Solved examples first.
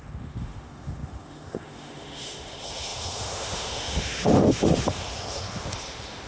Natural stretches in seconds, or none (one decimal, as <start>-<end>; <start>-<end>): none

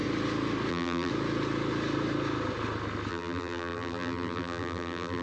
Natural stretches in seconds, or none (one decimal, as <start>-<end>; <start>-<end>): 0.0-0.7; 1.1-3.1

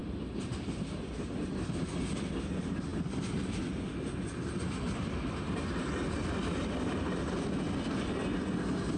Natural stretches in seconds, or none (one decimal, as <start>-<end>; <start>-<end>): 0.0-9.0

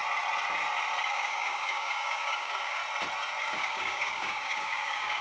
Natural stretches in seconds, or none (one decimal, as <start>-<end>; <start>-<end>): 0.0-1.1; 2.8-3.4

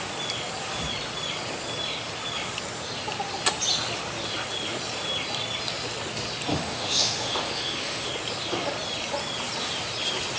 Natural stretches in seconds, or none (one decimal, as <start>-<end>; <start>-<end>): 0.0-6.5; 8.1-10.4

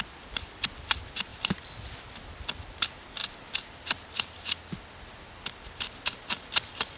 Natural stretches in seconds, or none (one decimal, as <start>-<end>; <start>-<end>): 0.0-1.3; 2.1-7.0

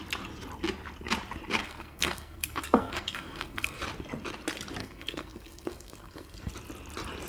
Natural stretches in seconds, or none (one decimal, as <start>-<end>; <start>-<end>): 0.0-1.6; 3.8-4.8; 6.5-7.3

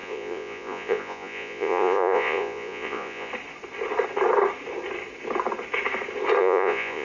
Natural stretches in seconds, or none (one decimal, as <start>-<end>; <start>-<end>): 3.3-6.4